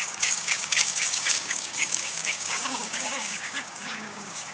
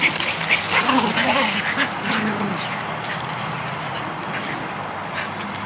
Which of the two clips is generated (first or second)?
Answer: first